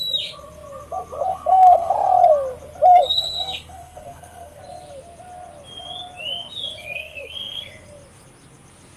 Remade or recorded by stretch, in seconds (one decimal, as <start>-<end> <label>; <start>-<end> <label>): 0.0-1.3 recorded; 1.3-1.9 remade; 1.9-2.9 recorded; 2.9-4.6 remade; 4.6-6.8 recorded; 6.8-7.7 remade; 7.7-9.0 recorded